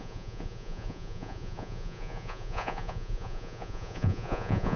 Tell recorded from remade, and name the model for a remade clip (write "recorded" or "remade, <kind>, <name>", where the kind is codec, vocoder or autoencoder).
remade, vocoder, Vocos